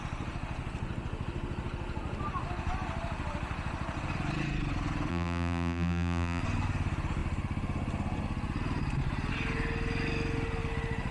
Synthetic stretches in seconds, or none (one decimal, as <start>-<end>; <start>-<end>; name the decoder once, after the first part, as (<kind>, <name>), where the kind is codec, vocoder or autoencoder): 5.1-6.4 (vocoder, BigVGAN v2)